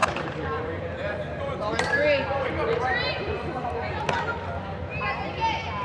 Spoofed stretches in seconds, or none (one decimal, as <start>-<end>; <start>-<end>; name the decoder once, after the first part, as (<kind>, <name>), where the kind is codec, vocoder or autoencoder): 0.0-3.5 (vocoder, BigVGAN v2)